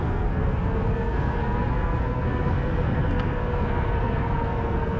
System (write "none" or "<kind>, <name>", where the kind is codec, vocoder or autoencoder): codec, SNAC